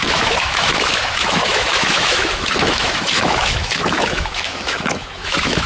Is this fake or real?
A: fake